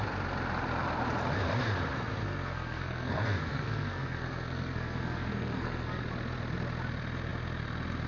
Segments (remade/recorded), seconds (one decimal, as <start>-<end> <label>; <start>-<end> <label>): 0.0-2.2 recorded; 2.2-6.0 remade; 6.0-8.1 recorded